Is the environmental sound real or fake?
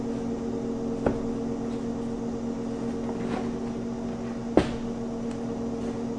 real